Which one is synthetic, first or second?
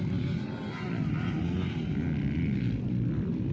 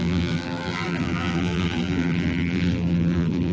second